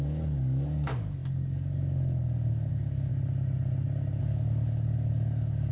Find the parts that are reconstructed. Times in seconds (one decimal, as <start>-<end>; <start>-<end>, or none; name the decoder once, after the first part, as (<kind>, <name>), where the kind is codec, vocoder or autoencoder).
0.0-3.1 (codec, DAC); 4.2-5.7